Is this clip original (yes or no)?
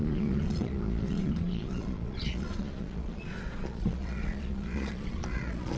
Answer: no